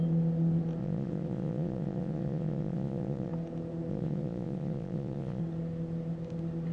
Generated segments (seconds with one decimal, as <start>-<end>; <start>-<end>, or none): 0.8-3.3; 3.9-5.4